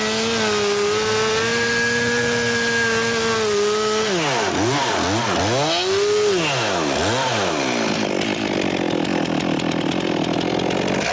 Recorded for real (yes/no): yes